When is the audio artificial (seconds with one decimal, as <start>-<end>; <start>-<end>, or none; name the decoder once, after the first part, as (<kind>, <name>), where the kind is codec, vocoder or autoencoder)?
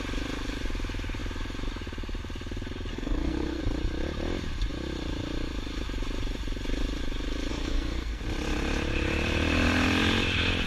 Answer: 2.9-3.6 (codec, SNAC); 7.5-8.2